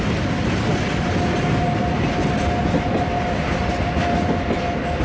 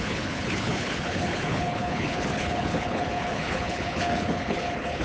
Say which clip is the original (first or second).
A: first